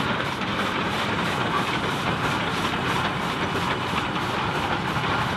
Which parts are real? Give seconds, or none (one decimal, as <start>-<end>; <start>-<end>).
0.0-0.5; 2.8-5.4